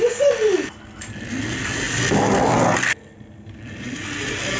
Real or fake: real